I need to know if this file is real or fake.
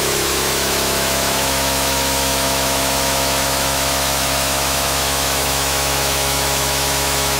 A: fake